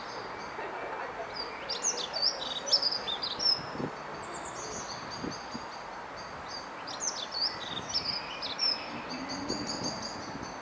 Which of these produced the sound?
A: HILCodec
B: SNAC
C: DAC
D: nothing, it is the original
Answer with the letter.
D